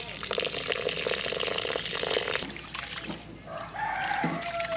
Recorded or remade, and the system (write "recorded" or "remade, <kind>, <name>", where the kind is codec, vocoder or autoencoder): recorded